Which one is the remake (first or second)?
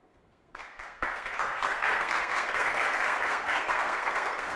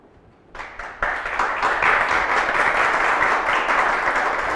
first